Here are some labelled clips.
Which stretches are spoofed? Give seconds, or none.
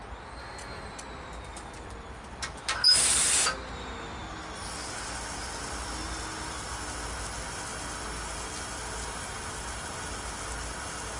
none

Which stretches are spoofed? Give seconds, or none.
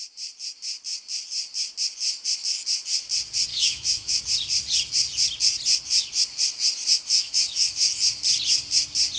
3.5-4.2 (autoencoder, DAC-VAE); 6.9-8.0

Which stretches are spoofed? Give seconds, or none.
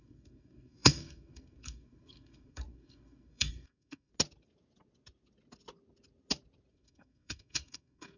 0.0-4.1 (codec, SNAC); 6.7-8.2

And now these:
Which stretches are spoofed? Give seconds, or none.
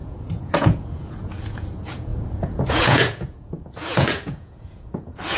0.0-5.4 (vocoder, Vocos)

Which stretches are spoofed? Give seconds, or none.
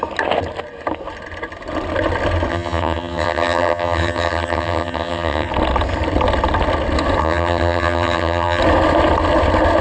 2.5-5.5 (vocoder, HiFi-GAN); 7.2-8.6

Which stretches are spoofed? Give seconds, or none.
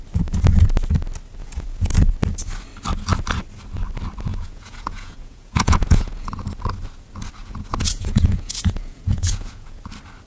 1.4-1.9 (vocoder, Vocos); 4.3-6.3; 7.4-9.8